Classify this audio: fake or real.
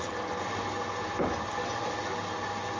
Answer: real